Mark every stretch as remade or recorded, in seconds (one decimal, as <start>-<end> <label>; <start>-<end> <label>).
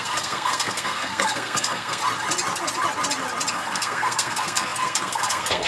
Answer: 0.0-2.0 remade; 2.0-3.5 recorded; 3.5-5.7 remade